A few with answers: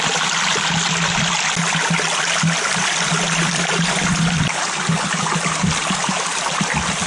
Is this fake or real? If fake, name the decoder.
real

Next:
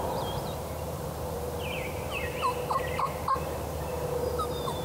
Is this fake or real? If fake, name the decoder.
fake, vocoder, BigVGAN v2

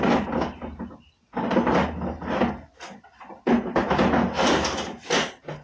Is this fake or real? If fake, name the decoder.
real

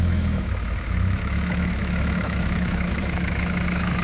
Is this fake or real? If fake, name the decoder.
fake, autoencoder, DAC-VAE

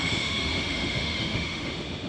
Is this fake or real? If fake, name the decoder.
fake, autoencoder, DAC-VAE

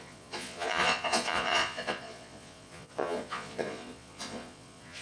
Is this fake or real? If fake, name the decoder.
fake, vocoder, Vocos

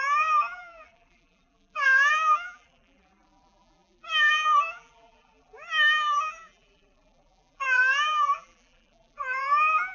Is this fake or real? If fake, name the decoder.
fake, vocoder, BigVGAN v2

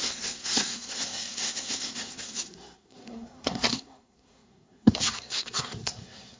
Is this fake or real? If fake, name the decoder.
fake, codec, SNAC